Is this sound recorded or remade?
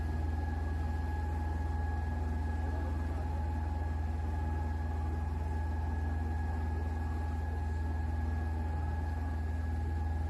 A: recorded